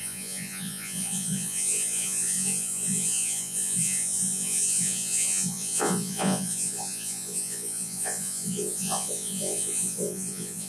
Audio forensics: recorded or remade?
remade